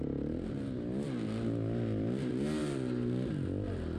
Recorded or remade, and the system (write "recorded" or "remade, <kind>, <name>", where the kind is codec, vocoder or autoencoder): recorded